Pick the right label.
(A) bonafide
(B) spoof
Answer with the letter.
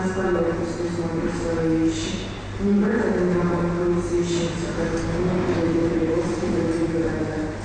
A